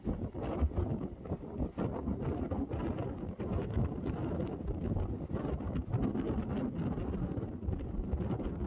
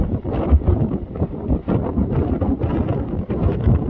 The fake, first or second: second